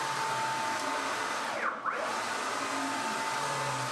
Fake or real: real